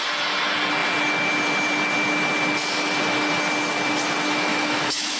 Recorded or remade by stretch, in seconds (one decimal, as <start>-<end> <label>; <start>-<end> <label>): 0.0-4.5 recorded; 4.5-5.2 remade

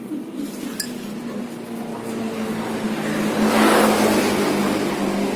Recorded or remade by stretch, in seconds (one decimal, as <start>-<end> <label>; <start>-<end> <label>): 0.0-5.4 recorded

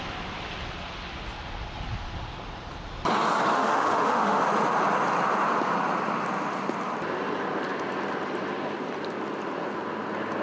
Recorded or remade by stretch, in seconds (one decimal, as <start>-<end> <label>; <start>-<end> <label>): 0.0-3.5 recorded; 3.5-4.4 remade; 4.4-10.4 recorded

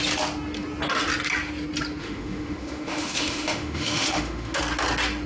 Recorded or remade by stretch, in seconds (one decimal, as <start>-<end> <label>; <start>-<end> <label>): 0.0-2.0 recorded; 2.0-4.6 remade; 4.6-5.3 recorded

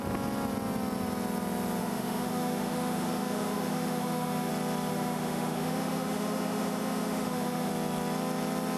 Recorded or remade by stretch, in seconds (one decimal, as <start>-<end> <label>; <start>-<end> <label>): 0.0-1.8 recorded; 1.8-4.5 remade; 4.5-4.9 recorded; 4.9-7.7 remade; 7.7-8.8 recorded

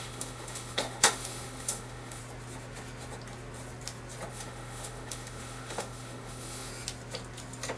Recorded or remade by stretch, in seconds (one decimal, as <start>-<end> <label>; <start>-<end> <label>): 0.0-2.2 remade; 2.2-4.3 recorded; 4.3-6.7 remade; 6.7-7.8 recorded